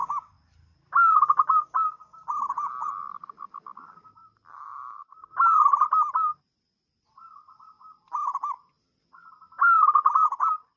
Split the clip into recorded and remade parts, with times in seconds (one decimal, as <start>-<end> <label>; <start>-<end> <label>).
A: 0.0-10.8 recorded